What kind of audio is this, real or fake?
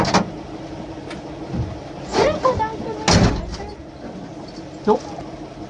real